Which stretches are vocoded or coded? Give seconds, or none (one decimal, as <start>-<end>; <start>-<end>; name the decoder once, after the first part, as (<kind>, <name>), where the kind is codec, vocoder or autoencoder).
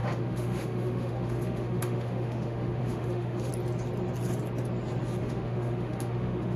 0.0-3.5 (autoencoder, DAC-VAE); 5.2-6.6